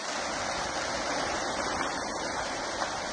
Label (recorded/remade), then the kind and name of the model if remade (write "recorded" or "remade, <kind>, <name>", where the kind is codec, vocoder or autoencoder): recorded